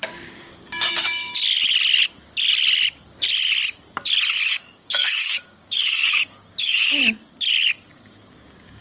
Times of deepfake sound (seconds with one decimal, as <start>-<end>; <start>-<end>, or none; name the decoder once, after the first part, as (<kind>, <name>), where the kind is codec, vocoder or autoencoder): 0.0-1.3 (codec, DAC); 4.5-7.0; 7.9-8.8